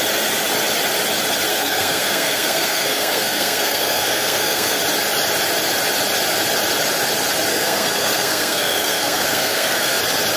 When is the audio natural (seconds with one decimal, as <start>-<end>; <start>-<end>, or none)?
0.0-1.5; 4.8-7.5; 10.0-10.4